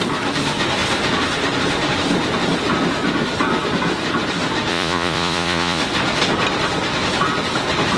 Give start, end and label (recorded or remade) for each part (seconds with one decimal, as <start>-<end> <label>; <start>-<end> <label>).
0.0-4.7 recorded; 4.7-5.8 remade; 5.8-8.0 recorded

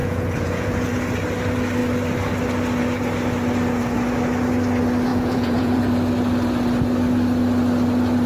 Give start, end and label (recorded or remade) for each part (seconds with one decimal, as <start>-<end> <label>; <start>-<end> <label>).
0.0-0.9 remade; 0.9-5.1 recorded; 5.1-5.8 remade; 5.8-8.3 recorded